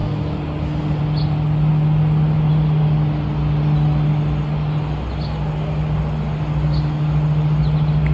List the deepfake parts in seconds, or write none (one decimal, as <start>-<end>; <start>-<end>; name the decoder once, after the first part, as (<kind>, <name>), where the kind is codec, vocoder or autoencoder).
none